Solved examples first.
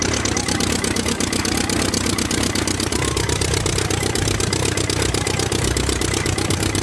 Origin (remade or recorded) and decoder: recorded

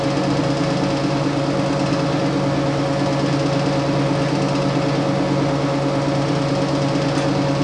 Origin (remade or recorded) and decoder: recorded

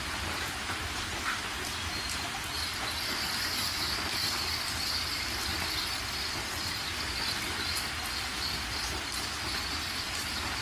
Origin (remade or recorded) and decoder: recorded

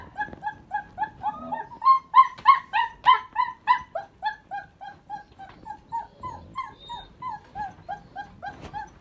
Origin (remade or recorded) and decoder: recorded